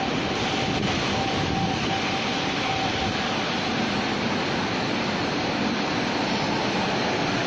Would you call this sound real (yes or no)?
yes